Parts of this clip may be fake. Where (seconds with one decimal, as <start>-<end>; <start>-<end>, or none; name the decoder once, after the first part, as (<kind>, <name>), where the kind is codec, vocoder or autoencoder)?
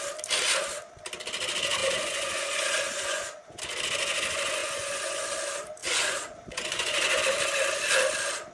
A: 1.8-3.6 (vocoder, Vocos); 4.6-5.2; 5.8-7.2